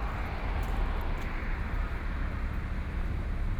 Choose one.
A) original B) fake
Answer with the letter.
A